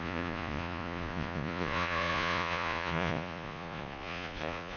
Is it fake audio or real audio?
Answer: fake